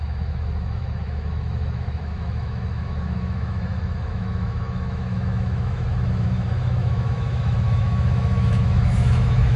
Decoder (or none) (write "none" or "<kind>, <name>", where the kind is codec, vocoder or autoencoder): autoencoder, DAC-VAE